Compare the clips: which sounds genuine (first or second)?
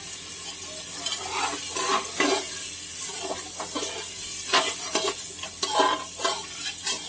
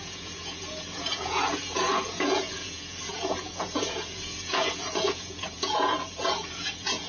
first